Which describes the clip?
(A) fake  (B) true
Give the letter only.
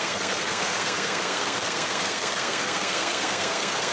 A